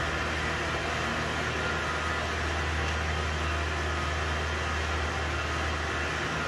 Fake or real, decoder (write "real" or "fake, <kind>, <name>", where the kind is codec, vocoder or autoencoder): real